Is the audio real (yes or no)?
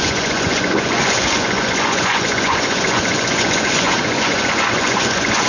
no